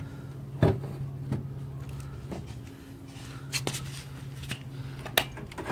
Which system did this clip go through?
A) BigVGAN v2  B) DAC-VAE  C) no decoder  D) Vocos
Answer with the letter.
C